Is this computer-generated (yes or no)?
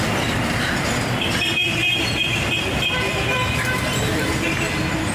yes